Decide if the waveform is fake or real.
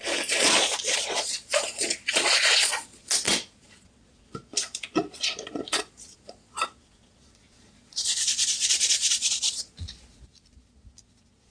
fake